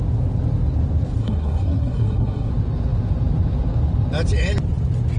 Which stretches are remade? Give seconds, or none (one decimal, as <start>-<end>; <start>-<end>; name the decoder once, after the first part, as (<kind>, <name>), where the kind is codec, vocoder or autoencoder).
1.2-2.5 (codec, SNAC)